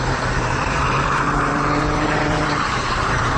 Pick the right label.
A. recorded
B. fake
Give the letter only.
B